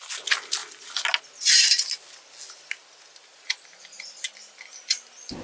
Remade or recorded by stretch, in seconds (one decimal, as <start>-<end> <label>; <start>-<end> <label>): 0.0-5.4 recorded